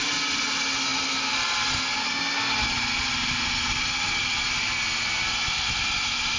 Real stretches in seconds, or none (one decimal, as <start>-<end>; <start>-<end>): 0.0-6.4